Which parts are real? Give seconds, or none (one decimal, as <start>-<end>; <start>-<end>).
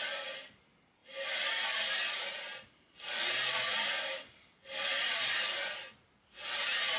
0.0-1.0; 5.2-7.0